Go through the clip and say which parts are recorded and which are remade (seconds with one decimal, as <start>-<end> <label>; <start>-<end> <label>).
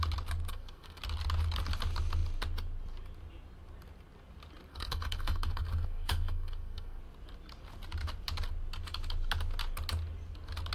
0.0-0.5 recorded; 0.5-1.0 remade; 1.0-4.7 recorded; 4.7-7.0 remade; 7.0-10.7 recorded